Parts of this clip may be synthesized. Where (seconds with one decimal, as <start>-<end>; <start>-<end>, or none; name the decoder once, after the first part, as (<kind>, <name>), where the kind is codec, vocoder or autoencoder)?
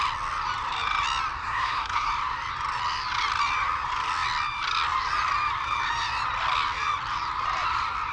1.4-2.1 (codec, SNAC)